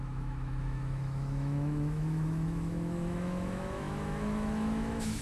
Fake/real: fake